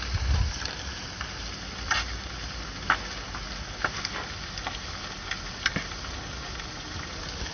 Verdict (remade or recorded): recorded